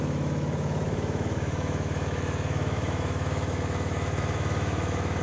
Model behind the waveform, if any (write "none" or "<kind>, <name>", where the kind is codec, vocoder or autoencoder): autoencoder, DAC-VAE